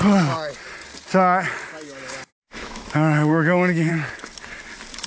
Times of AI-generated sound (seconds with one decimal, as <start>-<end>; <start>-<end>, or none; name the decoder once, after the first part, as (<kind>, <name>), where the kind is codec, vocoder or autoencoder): 2.4-3.9 (autoencoder, DAC-VAE)